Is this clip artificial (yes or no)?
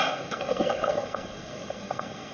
yes